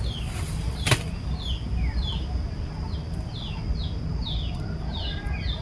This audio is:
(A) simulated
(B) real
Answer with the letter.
B